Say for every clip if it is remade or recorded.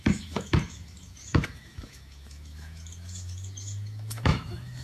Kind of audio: remade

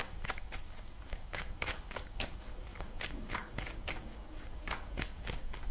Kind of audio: remade